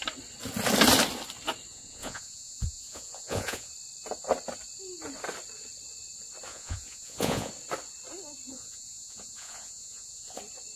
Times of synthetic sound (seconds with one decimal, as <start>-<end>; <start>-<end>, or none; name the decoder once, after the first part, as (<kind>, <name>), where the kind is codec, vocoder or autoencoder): 1.7-3.7 (vocoder, Vocos); 6.5-7.5; 8.5-10.4